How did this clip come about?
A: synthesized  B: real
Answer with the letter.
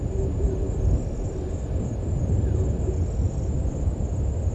B